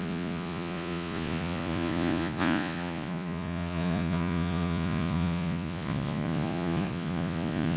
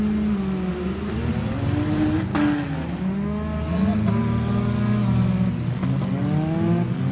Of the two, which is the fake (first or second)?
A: first